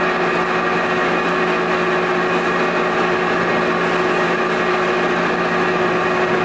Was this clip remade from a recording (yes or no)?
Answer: no